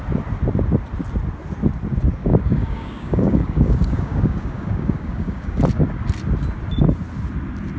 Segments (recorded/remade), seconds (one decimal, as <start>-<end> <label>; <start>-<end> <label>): 0.0-2.2 recorded; 2.2-5.6 remade; 5.6-7.8 recorded